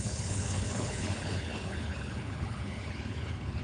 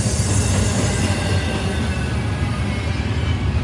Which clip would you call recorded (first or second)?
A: second